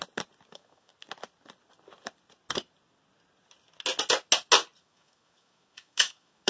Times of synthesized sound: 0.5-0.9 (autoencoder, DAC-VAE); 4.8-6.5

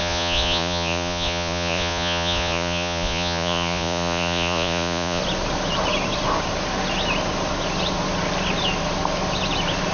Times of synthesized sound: 0.0-5.2 (vocoder, Vocos)

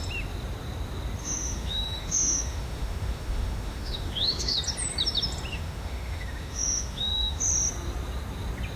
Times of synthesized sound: 1.2-4.6 (autoencoder, DAC-VAE); 5.5-7.4

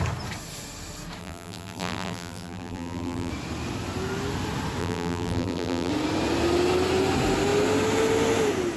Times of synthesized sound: 1.2-3.3 (vocoder, BigVGAN v2); 4.8-5.9

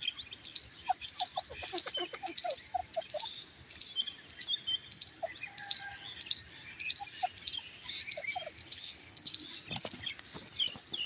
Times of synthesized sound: 8.6-9.3 (codec, HILCodec)

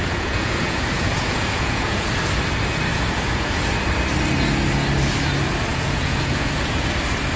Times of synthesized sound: 0.0-2.1 (vocoder, Vocos); 2.9-3.6; 5.7-6.9